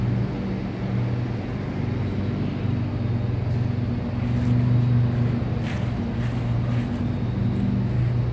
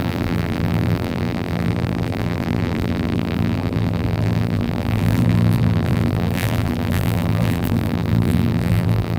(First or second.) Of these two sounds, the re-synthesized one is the second